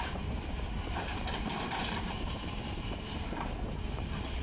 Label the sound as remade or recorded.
remade